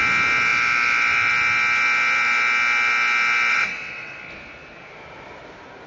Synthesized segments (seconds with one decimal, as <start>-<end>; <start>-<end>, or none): 3.5-4.2